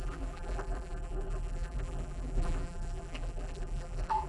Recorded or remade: remade